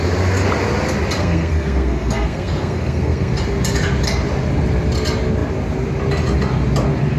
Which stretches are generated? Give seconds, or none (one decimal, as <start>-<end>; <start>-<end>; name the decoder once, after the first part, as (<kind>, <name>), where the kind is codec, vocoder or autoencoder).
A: 1.2-3.3 (codec, SNAC)